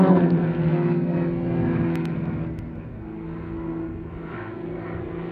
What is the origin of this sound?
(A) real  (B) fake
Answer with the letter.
B